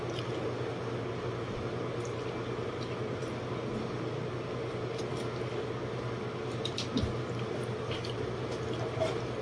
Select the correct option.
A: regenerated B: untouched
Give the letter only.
B